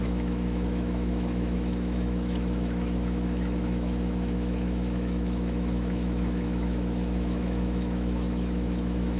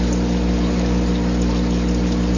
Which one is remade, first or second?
first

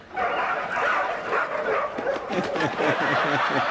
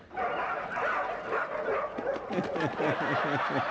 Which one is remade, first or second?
first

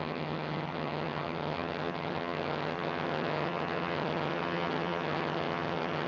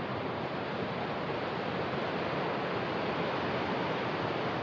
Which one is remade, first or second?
first